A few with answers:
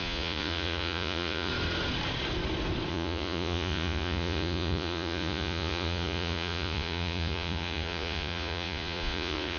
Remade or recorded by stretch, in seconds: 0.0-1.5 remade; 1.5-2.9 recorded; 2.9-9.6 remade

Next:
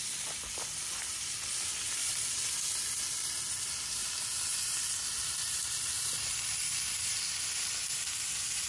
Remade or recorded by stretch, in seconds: 0.0-2.0 recorded; 2.0-2.5 remade; 2.5-4.0 recorded; 4.0-6.6 remade; 6.6-8.7 recorded

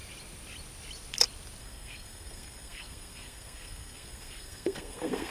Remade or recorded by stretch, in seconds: 0.0-1.6 recorded; 1.6-5.3 remade

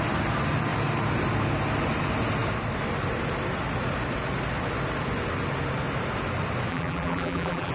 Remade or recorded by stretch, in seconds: 0.0-6.7 recorded; 6.7-7.7 remade

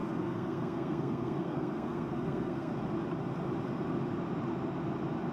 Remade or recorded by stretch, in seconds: 0.0-2.7 remade; 2.7-5.3 recorded

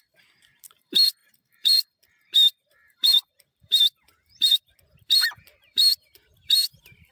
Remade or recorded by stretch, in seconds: 0.0-7.1 remade